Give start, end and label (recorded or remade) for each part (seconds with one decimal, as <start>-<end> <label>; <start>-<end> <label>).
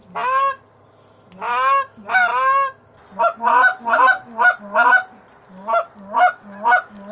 0.0-7.1 recorded